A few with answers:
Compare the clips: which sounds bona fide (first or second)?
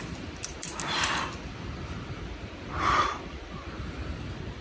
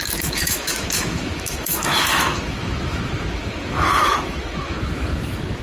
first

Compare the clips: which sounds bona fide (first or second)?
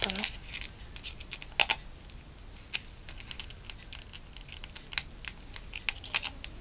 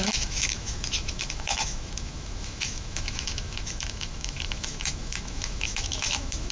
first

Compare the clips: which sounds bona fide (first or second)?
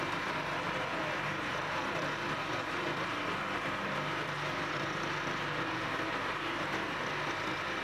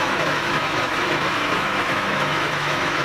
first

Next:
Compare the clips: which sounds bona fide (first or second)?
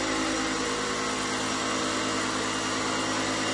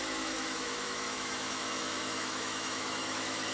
first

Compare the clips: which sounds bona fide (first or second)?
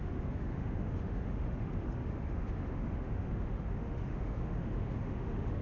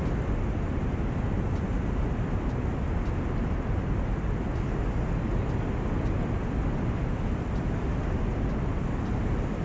second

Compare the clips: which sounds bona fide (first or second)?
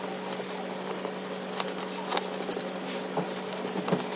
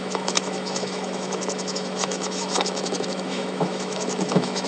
first